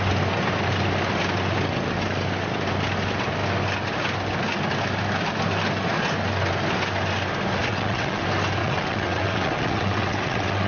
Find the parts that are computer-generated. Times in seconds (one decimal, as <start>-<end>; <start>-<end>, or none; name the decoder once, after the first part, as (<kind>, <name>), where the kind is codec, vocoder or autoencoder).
7.6-8.2 (vocoder, WaveNeXt); 8.6-10.7